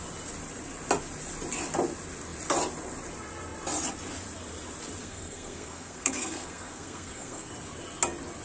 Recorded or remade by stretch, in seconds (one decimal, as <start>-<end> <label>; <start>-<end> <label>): 0.0-5.0 recorded; 5.0-7.5 remade; 7.5-8.4 recorded